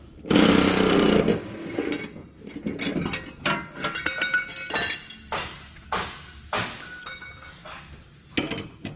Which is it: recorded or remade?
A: recorded